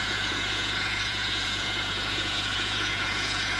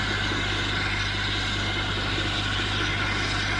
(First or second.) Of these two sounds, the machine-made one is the first